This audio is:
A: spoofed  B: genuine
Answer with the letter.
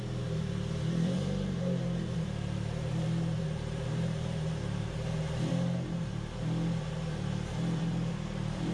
A